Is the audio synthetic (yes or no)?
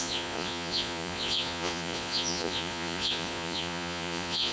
yes